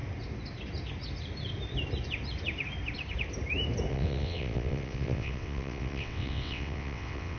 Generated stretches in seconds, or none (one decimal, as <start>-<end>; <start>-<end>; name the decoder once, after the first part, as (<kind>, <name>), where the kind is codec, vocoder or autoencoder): 3.9-7.4 (vocoder, WaveNeXt)

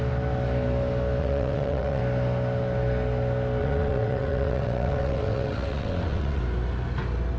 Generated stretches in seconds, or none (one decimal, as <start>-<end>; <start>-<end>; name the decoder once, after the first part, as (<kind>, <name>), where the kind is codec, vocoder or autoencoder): 1.2-2.0 (vocoder, WaveNeXt); 3.6-6.4

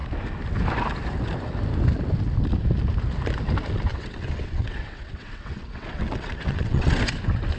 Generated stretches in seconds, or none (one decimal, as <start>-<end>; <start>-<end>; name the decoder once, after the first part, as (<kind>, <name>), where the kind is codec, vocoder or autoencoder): 3.9-7.0 (vocoder, WaveNeXt)

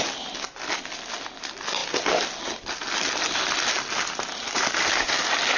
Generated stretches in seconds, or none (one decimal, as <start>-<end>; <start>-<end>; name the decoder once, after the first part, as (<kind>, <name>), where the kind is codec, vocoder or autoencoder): none

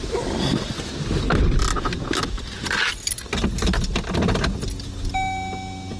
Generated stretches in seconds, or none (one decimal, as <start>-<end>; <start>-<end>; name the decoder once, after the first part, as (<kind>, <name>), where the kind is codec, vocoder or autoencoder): none

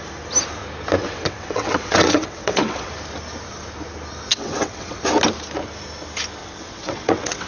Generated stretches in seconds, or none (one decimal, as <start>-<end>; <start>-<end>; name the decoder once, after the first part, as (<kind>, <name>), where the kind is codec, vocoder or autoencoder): 1.0-2.9 (vocoder, WaveNeXt); 4.3-5.0; 6.4-7.5

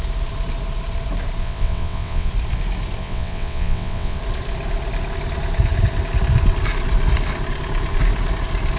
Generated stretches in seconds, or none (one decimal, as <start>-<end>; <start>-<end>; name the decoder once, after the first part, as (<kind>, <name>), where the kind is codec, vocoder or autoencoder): 1.4-2.3 (vocoder, WaveNeXt); 3.0-4.2

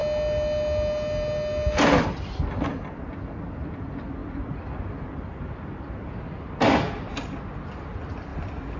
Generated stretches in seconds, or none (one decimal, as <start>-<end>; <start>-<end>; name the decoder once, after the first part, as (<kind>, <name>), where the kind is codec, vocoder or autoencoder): none